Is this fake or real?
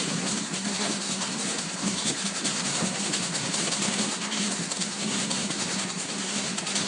fake